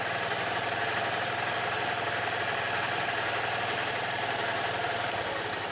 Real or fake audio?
real